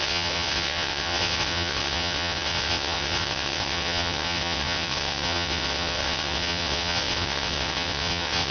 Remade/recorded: remade